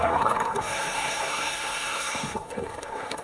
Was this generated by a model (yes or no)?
yes